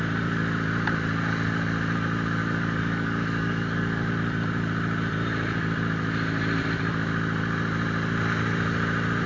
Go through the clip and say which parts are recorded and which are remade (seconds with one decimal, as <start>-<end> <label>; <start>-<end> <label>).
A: 0.0-2.4 recorded; 2.4-4.1 remade; 4.1-9.3 recorded